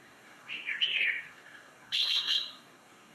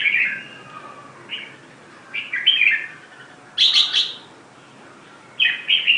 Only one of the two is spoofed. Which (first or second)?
first